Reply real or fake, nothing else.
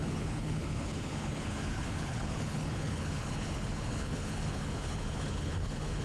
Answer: fake